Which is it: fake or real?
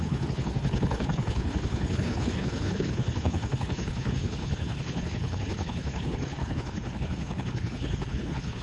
fake